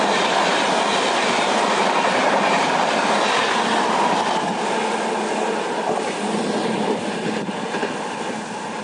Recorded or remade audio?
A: recorded